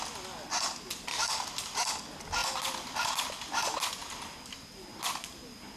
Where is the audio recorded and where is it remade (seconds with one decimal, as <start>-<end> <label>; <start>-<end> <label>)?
0.0-5.8 recorded